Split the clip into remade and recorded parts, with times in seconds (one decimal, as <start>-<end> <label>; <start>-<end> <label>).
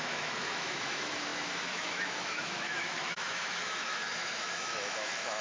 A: 0.0-5.4 remade